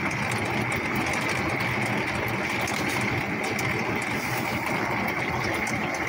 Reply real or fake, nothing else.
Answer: real